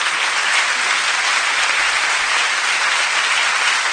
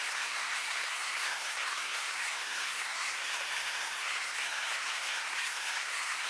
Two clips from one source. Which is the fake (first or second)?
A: second